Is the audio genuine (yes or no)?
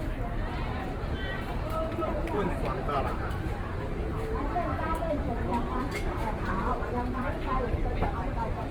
no